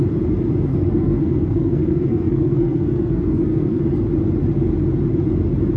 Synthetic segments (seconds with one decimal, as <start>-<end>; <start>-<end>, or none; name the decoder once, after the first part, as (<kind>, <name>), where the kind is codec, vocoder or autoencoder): 0.7-3.8 (codec, SNAC)